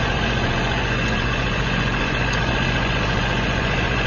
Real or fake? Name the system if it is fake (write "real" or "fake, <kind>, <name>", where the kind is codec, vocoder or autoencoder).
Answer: fake, vocoder, Vocos